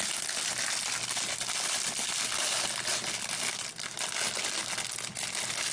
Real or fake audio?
real